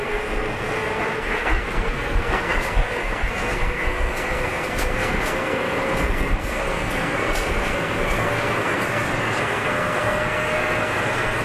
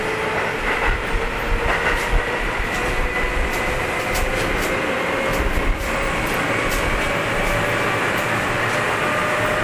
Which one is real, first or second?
second